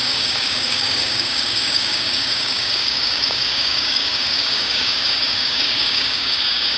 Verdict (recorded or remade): remade